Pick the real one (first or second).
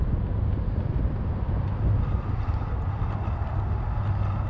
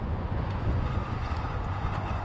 first